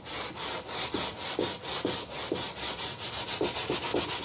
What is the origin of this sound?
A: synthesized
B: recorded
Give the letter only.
B